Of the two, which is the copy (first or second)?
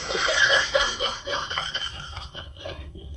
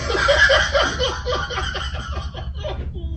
first